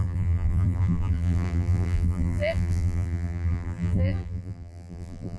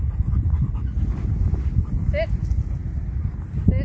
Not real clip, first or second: first